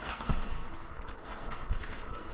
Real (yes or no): no